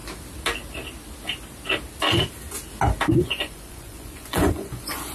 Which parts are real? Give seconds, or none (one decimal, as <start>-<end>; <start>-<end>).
0.0-3.1